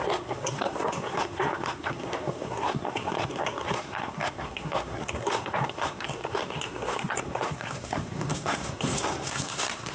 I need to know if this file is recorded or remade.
remade